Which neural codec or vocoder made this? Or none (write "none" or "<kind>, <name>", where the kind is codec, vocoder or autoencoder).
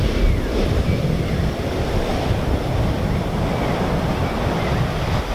none